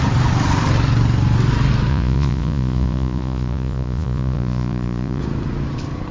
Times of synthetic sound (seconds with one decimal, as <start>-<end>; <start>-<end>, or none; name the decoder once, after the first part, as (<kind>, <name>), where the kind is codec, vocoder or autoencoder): 1.9-5.2 (vocoder, Vocos)